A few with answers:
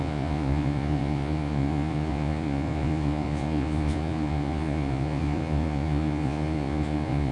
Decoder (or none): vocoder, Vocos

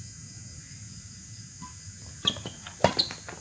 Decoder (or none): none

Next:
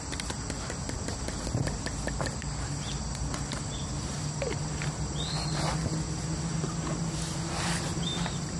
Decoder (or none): none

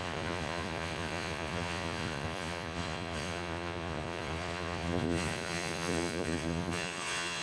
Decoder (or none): vocoder, Vocos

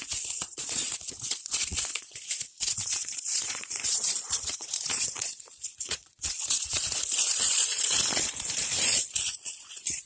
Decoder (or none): vocoder, Vocos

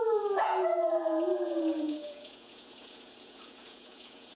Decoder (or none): vocoder, Vocos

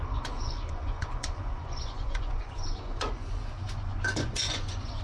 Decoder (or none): vocoder, Vocos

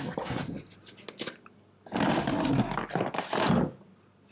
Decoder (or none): none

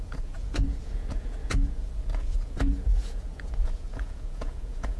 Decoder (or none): vocoder, Vocos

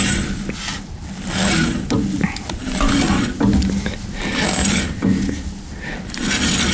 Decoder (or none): none